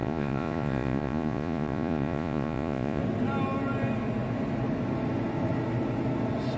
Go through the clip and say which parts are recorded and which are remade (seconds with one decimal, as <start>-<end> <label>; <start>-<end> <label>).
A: 0.0-3.0 remade; 3.0-6.6 recorded